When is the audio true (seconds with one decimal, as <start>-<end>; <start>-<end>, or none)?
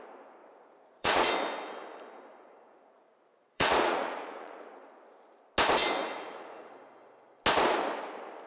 0.0-0.4; 1.3-2.3; 4.7-6.0; 6.7-8.5